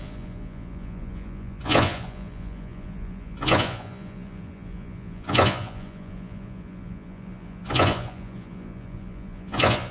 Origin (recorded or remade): remade